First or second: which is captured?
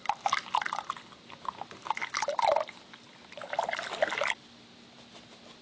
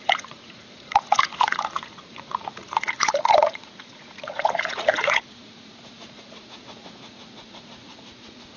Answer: first